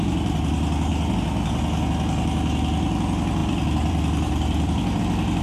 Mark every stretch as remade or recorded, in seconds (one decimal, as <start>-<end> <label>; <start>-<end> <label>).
0.0-3.4 recorded; 3.4-5.0 remade; 5.0-5.4 recorded